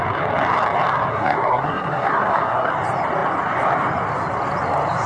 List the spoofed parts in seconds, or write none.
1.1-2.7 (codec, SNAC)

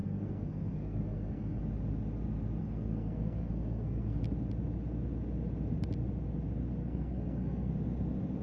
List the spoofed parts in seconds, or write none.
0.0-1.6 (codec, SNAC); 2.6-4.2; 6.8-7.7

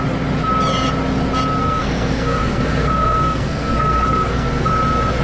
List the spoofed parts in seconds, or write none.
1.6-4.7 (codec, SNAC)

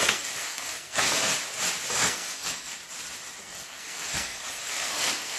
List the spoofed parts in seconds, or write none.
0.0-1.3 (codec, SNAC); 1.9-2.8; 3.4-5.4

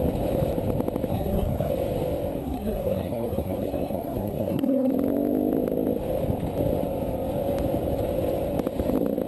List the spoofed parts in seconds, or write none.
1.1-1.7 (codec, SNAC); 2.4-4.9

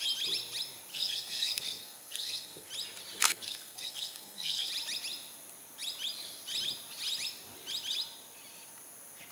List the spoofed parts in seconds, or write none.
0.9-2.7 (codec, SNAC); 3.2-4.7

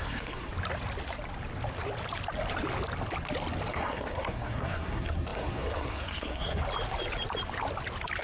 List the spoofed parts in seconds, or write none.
0.0-0.5 (codec, SNAC); 3.7-6.6